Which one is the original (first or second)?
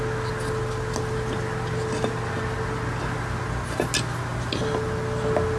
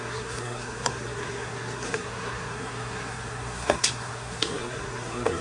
first